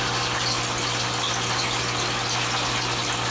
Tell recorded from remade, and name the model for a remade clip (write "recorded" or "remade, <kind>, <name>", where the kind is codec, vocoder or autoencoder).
recorded